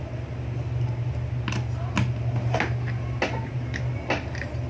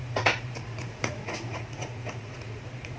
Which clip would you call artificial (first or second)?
second